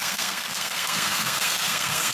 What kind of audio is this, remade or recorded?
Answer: remade